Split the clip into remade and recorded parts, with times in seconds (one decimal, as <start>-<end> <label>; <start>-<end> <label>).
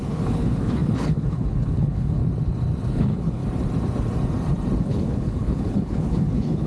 0.0-2.2 remade; 2.2-2.9 recorded; 2.9-3.4 remade; 3.4-4.8 recorded; 4.8-6.7 remade